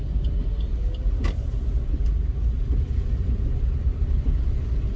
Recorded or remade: recorded